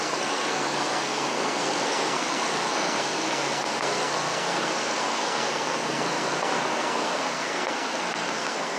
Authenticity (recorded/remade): remade